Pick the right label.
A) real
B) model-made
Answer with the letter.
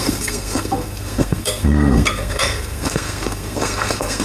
B